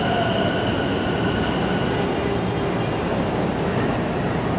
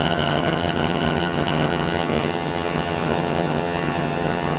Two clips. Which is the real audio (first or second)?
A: first